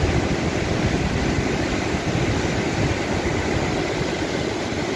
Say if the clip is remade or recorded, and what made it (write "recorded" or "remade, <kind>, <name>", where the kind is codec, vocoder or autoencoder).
recorded